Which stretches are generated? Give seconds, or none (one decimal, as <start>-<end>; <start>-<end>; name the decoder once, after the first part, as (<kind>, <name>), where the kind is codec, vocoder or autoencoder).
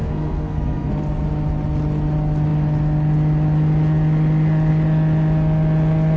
0.0-0.9 (codec, SNAC)